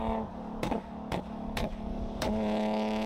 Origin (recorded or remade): remade